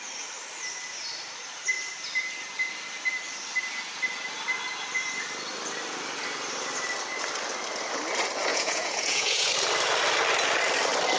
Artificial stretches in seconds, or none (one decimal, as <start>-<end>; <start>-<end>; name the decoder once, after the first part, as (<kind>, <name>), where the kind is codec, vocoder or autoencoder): 8.5-9.5 (vocoder, Vocos)